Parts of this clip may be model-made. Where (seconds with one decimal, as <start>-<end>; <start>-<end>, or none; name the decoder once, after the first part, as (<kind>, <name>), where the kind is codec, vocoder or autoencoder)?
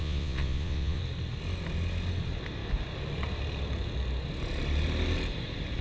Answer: 0.0-1.0 (vocoder, Vocos)